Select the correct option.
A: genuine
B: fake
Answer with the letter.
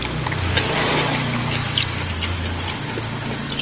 A